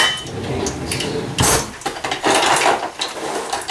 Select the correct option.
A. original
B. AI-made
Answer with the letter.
A